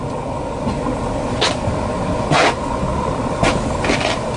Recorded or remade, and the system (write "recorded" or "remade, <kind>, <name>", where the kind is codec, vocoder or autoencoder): recorded